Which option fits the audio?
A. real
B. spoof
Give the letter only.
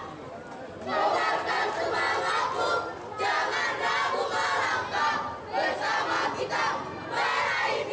A